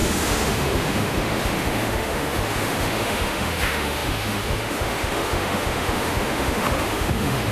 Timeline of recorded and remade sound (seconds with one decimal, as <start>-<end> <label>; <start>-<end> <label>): 0.0-7.5 remade